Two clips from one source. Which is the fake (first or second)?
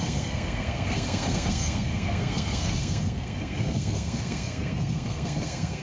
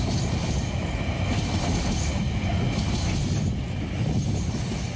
first